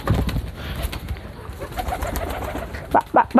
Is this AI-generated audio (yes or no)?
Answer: no